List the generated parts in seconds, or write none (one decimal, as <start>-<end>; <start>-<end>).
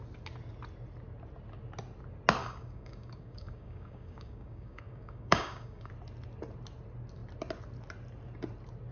2.4-5.9